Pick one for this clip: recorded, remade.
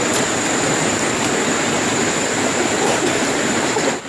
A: recorded